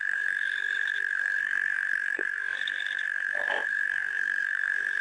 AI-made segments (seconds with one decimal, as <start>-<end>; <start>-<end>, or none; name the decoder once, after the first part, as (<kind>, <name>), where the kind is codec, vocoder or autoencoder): 0.0-5.0 (codec, SNAC)